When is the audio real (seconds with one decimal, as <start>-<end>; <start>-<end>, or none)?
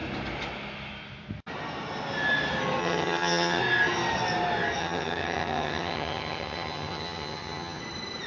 0.0-2.8; 3.6-4.8; 7.8-8.3